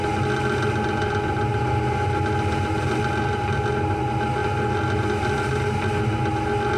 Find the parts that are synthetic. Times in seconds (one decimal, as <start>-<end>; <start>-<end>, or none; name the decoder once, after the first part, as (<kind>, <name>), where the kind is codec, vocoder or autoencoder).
none